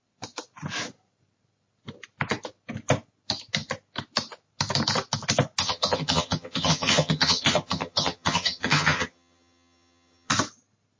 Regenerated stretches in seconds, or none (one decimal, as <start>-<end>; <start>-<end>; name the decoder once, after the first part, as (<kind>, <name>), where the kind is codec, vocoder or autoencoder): 5.6-10.3 (vocoder, HiFi-GAN)